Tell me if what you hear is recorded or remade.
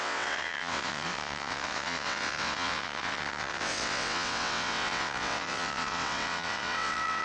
remade